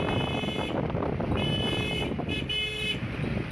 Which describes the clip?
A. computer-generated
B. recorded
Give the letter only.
B